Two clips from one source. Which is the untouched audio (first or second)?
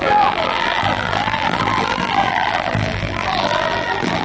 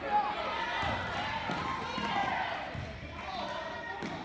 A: second